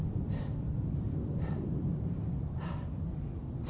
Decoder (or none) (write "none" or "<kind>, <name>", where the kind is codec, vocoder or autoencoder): vocoder, BigVGAN v2